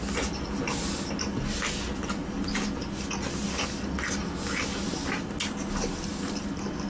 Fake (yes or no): no